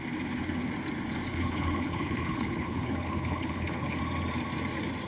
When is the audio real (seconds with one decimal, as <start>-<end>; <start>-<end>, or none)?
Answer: 0.0-1.3; 4.0-5.1